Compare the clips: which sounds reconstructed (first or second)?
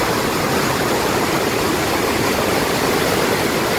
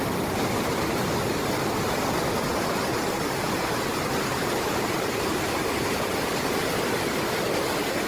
first